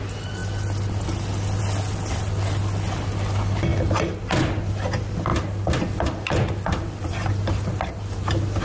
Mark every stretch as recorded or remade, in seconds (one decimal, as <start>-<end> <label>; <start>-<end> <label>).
0.0-8.6 recorded